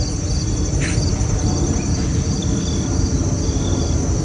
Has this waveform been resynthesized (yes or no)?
no